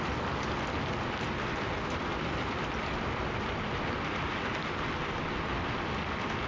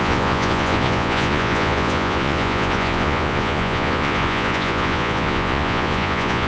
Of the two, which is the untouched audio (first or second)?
first